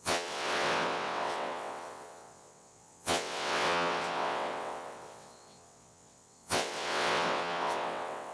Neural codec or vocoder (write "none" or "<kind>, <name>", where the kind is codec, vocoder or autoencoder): vocoder, WaveNeXt